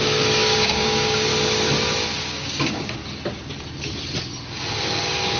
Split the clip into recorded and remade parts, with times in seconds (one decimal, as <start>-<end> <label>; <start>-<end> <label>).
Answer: 0.0-1.3 remade; 1.3-2.2 recorded; 2.2-3.0 remade; 3.0-4.8 recorded; 4.8-5.4 remade